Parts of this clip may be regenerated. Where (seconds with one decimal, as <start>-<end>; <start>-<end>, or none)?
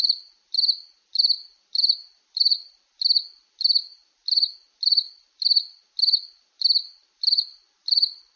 0.0-8.4